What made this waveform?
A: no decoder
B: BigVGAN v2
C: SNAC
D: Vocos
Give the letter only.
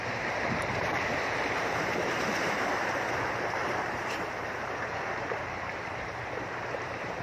B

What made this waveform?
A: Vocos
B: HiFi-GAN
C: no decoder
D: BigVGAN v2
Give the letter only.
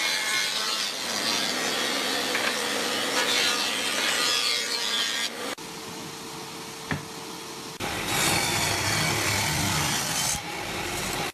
C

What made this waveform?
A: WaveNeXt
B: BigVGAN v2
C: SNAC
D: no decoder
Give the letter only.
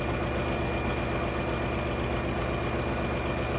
D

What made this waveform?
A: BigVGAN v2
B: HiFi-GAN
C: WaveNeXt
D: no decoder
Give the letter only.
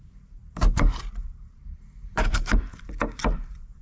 A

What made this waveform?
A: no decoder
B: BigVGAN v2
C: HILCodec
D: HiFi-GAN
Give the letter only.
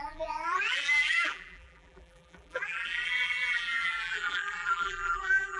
B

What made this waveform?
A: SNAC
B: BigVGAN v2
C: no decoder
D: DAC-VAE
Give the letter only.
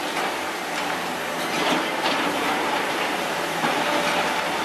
B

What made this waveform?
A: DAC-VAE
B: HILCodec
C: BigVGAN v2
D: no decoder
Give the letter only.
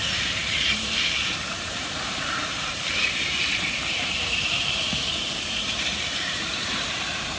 C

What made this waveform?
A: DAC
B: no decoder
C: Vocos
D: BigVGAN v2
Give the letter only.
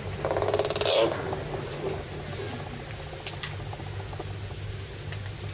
B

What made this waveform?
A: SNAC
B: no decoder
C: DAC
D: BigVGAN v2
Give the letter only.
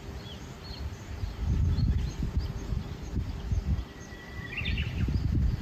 D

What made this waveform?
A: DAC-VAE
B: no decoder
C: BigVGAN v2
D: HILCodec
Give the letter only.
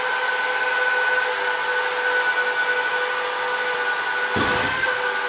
B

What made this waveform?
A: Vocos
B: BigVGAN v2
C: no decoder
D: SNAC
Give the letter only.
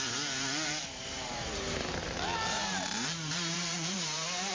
B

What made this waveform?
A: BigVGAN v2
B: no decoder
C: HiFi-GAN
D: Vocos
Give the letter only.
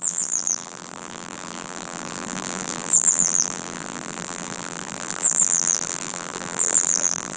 A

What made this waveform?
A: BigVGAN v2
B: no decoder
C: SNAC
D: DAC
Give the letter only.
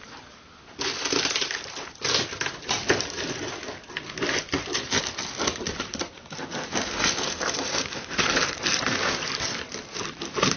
A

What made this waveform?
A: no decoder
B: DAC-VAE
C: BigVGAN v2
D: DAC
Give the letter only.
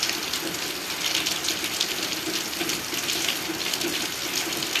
A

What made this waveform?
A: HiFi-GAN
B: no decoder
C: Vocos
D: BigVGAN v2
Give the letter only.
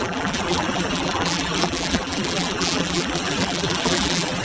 D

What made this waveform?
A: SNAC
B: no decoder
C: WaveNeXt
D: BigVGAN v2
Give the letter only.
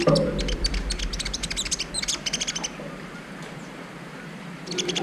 D